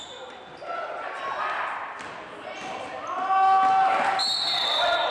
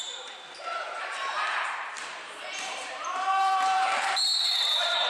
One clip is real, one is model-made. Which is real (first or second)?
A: first